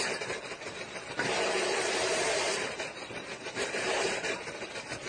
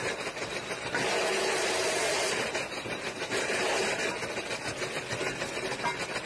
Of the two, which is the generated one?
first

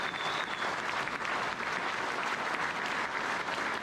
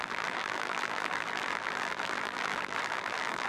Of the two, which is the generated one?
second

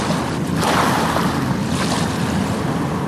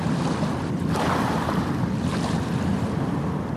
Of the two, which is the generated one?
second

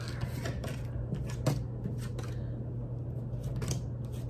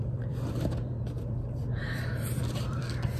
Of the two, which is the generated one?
second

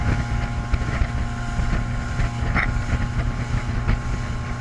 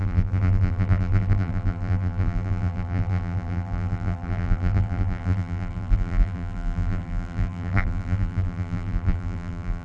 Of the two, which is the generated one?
second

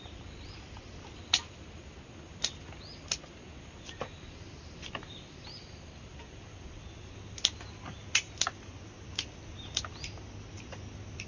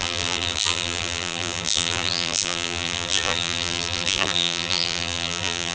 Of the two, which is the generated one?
second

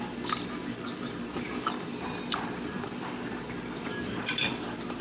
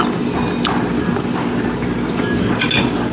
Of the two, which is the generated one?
first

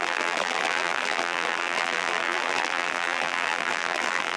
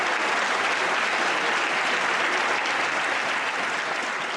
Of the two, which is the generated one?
first